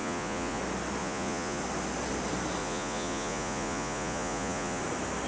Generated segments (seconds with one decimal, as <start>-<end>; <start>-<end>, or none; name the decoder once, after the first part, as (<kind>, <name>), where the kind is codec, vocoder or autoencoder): 0.0-0.6 (vocoder, Vocos); 1.0-1.6; 2.6-4.8